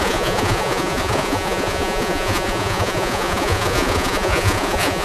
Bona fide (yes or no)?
no